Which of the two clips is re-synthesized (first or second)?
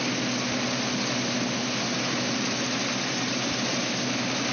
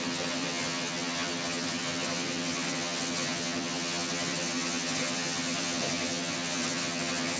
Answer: second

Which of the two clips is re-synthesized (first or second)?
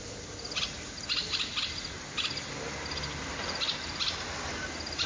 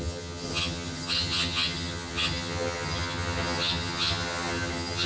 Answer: second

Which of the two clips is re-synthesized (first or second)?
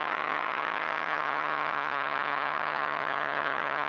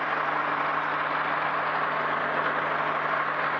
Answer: first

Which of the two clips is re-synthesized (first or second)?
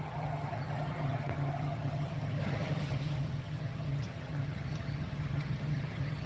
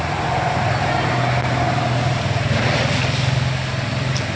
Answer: first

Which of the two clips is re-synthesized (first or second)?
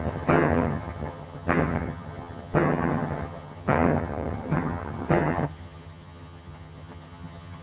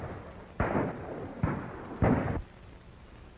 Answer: first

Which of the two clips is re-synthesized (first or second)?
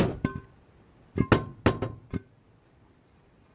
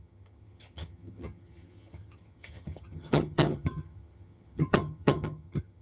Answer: second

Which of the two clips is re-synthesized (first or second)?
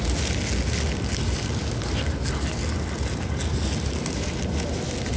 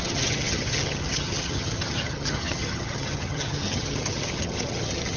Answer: second